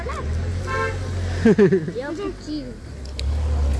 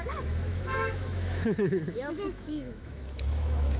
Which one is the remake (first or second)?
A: second